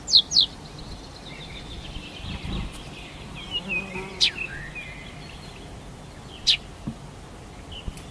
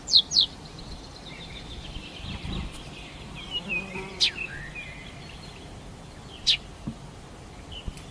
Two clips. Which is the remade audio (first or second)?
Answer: second